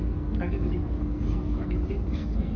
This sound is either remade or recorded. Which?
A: remade